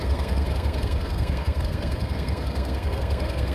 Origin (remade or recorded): remade